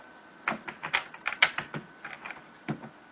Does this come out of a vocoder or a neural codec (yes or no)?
no